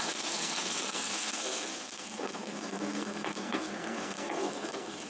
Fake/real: fake